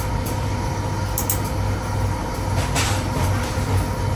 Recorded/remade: recorded